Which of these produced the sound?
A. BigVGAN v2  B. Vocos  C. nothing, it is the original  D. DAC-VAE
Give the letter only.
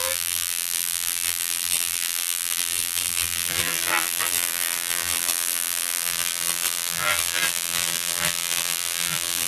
A